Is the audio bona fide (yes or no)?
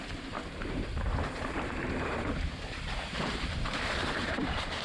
no